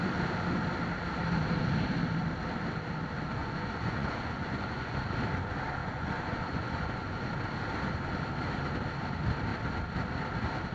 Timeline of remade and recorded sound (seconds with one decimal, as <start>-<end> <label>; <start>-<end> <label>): 0.0-3.4 recorded; 3.4-5.0 remade; 5.0-5.8 recorded; 5.8-7.3 remade; 7.3-10.7 recorded